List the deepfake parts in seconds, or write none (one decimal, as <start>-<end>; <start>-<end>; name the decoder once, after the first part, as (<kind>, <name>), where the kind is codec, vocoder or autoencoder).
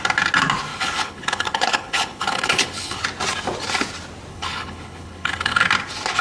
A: 0.7-3.0 (codec, HILCodec); 4.3-5.6